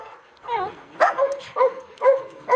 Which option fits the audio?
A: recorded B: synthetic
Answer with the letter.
B